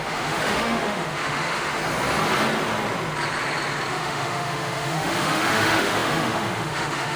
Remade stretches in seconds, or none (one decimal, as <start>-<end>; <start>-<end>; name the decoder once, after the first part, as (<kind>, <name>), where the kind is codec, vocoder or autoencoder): 0.0-1.8 (autoencoder, DAC-VAE); 3.9-7.2